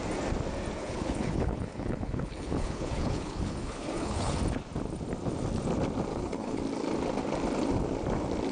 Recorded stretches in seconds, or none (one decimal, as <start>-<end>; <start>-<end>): 0.0-0.8; 4.4-6.1; 6.6-8.5